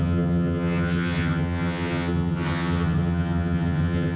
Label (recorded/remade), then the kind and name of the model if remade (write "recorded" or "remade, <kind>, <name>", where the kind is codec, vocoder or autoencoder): remade, vocoder, HiFi-GAN